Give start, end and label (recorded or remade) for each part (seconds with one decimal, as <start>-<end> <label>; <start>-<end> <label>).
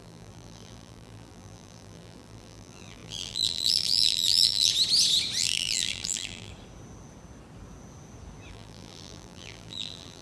0.0-4.7 remade; 4.7-5.4 recorded; 5.4-6.5 remade; 6.5-8.5 recorded; 8.5-10.2 remade